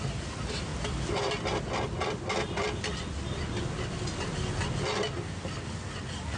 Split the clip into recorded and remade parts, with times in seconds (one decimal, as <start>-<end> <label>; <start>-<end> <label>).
0.0-6.4 recorded